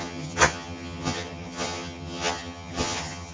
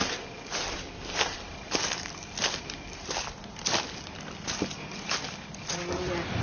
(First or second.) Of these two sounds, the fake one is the first